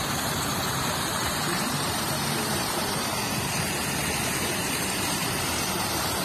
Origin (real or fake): fake